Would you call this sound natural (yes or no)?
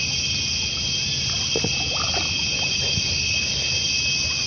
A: yes